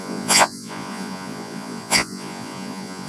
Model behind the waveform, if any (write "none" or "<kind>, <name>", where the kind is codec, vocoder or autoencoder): vocoder, Vocos